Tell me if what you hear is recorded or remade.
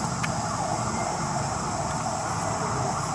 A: recorded